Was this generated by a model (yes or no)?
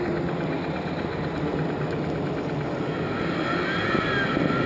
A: no